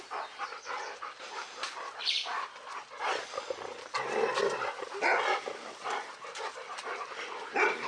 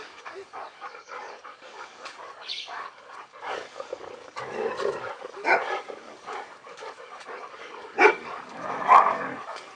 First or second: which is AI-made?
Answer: second